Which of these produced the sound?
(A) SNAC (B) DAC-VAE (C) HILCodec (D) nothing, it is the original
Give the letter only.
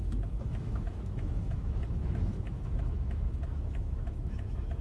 B